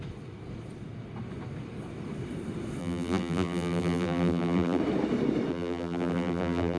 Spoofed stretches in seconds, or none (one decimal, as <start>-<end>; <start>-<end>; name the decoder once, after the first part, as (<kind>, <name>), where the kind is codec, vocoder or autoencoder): 2.8-4.8 (vocoder, BigVGAN v2); 5.5-6.8